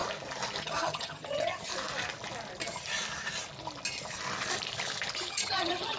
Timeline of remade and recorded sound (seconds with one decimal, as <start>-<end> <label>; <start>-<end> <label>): 0.0-0.6 recorded; 0.6-1.7 remade; 1.7-5.3 recorded; 5.3-6.0 remade